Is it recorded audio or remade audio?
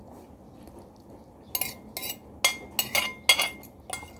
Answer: recorded